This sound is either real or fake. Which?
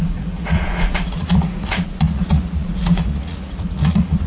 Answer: fake